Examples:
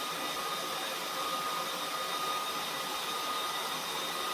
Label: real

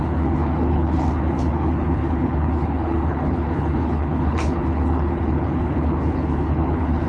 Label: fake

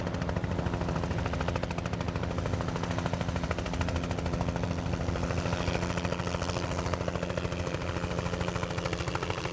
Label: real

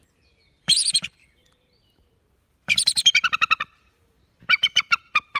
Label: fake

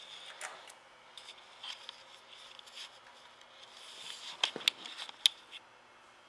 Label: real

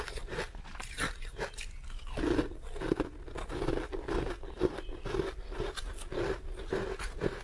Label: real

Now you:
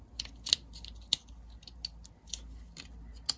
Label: real